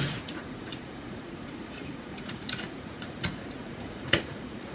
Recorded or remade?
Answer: remade